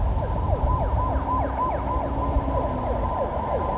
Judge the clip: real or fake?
real